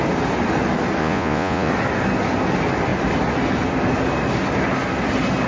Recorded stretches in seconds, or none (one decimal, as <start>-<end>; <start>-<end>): 0.0-1.0; 1.7-5.5